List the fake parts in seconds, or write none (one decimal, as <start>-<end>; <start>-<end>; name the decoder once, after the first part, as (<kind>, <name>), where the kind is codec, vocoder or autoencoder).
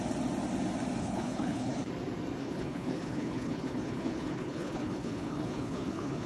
1.0-1.9 (codec, HILCodec); 2.4-6.3